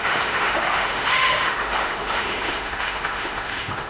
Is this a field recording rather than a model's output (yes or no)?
no